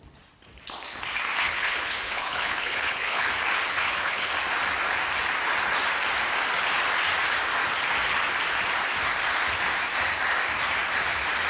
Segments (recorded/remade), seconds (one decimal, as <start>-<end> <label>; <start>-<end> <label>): 0.0-1.4 recorded; 1.4-3.3 remade; 3.3-3.7 recorded; 3.7-4.3 remade; 4.3-11.5 recorded